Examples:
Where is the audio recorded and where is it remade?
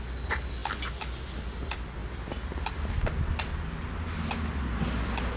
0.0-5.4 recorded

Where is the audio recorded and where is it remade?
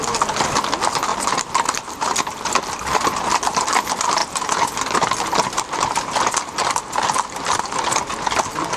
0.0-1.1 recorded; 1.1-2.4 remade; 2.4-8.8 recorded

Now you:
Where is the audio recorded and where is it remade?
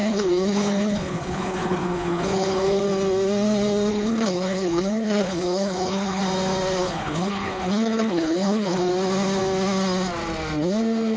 0.0-2.8 remade; 2.8-3.9 recorded; 3.9-6.2 remade; 6.2-6.8 recorded; 6.8-8.9 remade; 8.9-11.2 recorded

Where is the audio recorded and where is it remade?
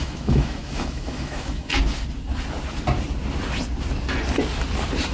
0.0-1.7 remade; 1.7-5.1 recorded